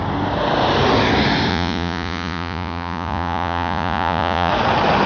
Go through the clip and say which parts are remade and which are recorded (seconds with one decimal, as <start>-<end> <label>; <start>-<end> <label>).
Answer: 0.0-1.5 recorded; 1.5-4.5 remade; 4.5-5.1 recorded